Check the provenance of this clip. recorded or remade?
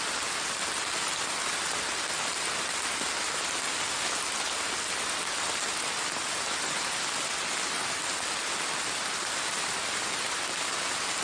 recorded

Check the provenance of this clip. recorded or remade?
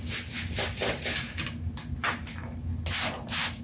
recorded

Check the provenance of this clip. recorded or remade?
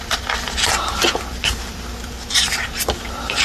remade